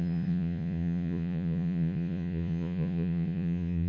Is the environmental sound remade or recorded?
remade